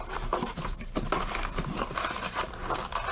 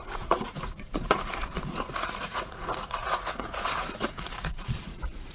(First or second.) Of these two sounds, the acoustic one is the first